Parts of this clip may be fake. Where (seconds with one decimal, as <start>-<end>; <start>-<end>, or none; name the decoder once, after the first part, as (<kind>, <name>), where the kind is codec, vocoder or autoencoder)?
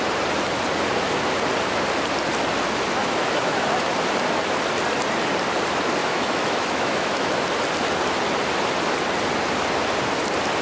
3.0-3.6 (autoencoder, DAC-VAE); 6.0-7.3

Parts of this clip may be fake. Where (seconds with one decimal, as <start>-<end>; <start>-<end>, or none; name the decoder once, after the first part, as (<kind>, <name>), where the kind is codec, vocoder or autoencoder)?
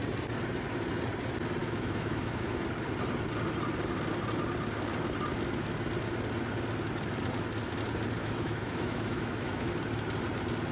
1.6-2.6 (autoencoder, DAC-VAE); 8.2-9.7